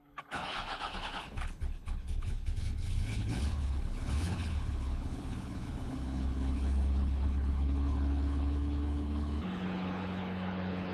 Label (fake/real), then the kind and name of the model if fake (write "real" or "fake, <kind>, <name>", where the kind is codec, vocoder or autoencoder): fake, codec, HILCodec